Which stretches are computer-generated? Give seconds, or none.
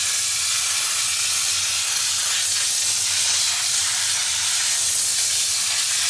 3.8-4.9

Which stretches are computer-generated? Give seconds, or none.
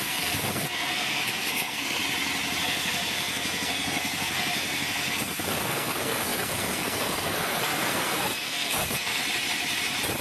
0.0-2.0; 2.6-9.2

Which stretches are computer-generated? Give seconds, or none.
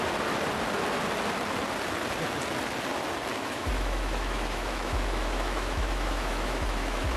3.3-7.2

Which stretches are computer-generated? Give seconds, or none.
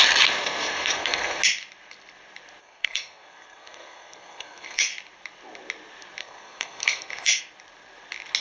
0.4-1.4; 2.6-4.9; 6.2-7.4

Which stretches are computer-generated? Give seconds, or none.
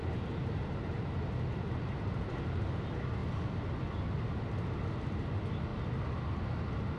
0.0-2.7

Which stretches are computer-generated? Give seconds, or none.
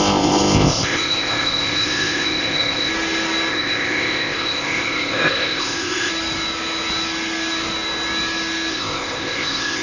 0.0-2.9; 3.5-6.1; 8.7-9.8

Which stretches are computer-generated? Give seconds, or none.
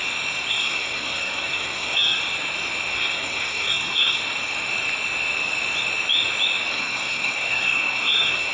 0.5-2.2; 2.9-4.2; 6.7-8.5